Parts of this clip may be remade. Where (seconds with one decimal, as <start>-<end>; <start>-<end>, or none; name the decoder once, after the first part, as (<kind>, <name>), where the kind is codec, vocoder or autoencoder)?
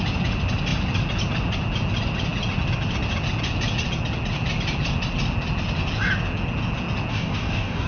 7.1-7.9 (codec, DAC)